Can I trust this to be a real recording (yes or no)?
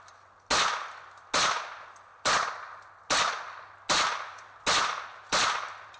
yes